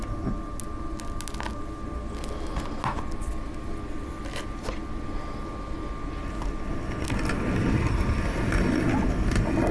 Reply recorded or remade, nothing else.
recorded